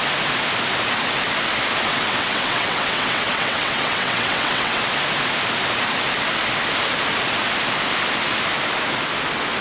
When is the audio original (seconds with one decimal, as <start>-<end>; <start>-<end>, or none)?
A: 0.0-1.9; 4.9-9.6